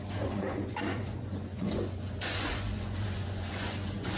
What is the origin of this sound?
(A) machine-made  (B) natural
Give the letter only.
A